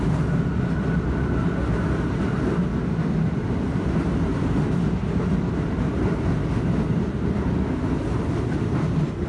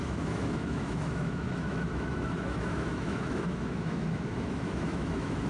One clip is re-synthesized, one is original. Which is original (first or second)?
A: first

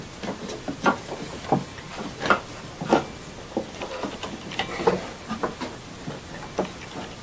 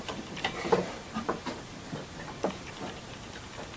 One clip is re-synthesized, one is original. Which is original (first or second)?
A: first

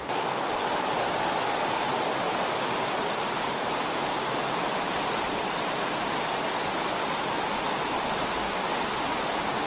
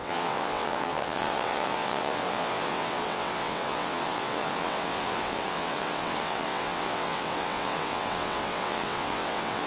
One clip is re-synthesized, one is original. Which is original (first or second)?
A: first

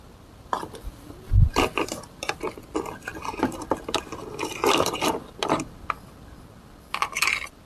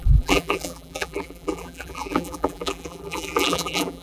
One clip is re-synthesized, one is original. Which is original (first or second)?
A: first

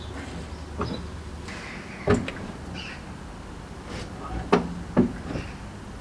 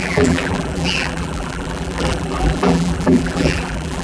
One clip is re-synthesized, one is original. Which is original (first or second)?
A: first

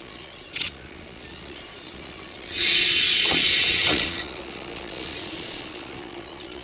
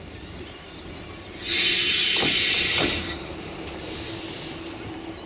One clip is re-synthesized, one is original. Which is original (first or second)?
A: second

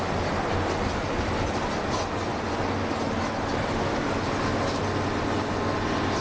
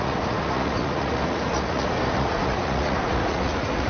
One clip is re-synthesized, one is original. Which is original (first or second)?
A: first